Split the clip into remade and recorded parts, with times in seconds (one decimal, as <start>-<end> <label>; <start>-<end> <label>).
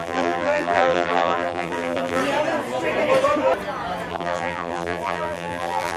0.0-2.2 remade; 2.2-4.1 recorded; 4.1-6.0 remade